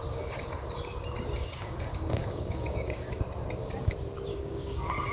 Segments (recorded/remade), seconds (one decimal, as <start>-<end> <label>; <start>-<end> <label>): 0.0-1.4 recorded; 1.4-3.2 remade; 3.2-4.3 recorded; 4.3-5.1 remade